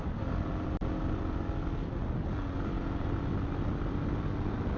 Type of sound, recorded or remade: recorded